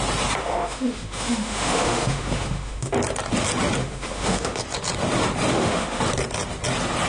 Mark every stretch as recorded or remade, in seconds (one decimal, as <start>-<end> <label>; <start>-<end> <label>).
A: 0.0-0.4 recorded; 0.4-2.9 remade; 2.9-3.8 recorded; 3.8-4.6 remade; 4.6-5.5 recorded; 5.5-6.0 remade; 6.0-7.1 recorded